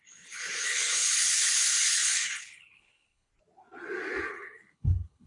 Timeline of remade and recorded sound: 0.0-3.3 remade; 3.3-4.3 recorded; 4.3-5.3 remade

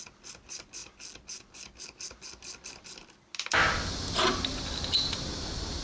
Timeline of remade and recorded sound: 0.0-5.8 recorded

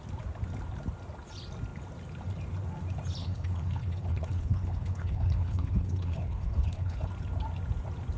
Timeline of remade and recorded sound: 0.0-3.2 recorded; 3.2-7.1 remade; 7.1-8.2 recorded

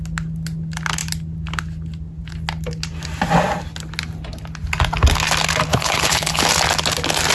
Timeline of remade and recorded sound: 0.0-5.7 recorded; 5.7-6.4 remade; 6.4-7.3 recorded

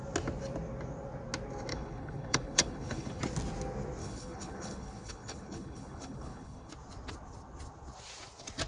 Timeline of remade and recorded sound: 0.0-1.7 recorded; 1.7-3.2 remade; 3.2-4.0 recorded; 4.0-6.7 remade; 6.7-8.7 recorded